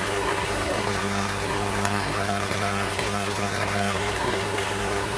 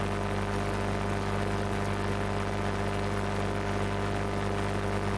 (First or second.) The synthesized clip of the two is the first